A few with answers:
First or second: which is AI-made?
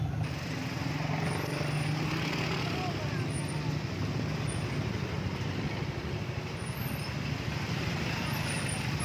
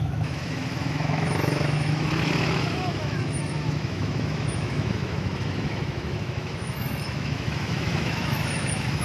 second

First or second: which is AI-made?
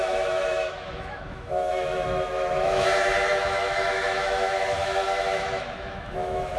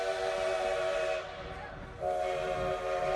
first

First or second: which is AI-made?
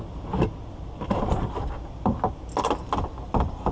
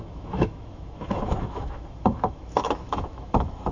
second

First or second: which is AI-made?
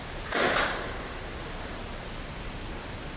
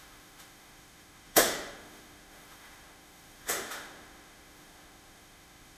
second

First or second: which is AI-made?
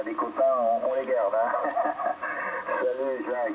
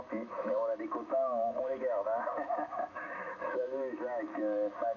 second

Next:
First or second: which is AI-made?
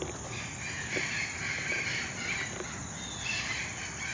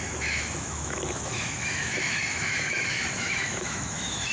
second